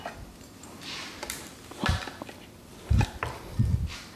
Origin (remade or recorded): remade